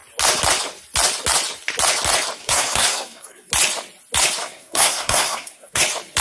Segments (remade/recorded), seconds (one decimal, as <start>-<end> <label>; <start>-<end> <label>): 0.0-2.4 recorded; 2.4-3.5 remade; 3.5-4.4 recorded; 4.4-5.8 remade; 5.8-6.2 recorded